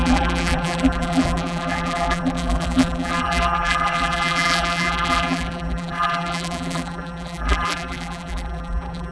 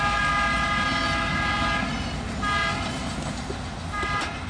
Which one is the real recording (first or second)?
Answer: second